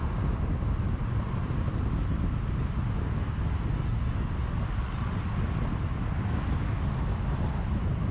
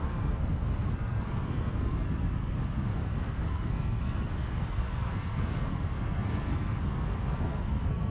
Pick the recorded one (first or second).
first